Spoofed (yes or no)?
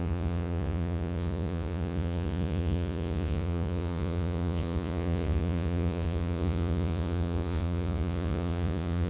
yes